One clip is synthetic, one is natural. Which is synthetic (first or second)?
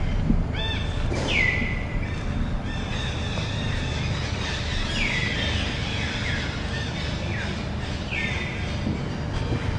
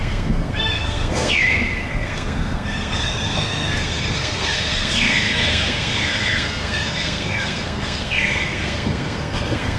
second